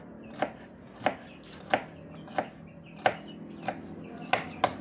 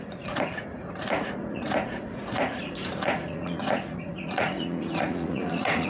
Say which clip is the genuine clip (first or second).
first